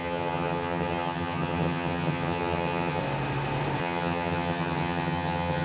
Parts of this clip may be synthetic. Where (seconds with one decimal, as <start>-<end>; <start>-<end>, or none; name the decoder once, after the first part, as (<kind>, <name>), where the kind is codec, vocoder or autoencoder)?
0.0-3.0 (vocoder, HiFi-GAN); 3.8-5.6